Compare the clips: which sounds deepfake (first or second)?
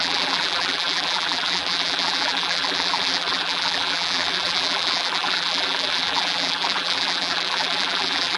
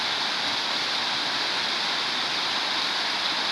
first